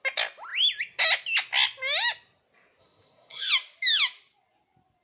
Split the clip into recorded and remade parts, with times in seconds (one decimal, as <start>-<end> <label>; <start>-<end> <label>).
0.0-2.8 recorded; 2.8-3.5 remade; 3.5-5.0 recorded